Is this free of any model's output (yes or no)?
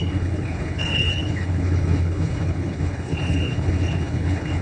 no